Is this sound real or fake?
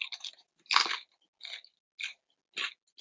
real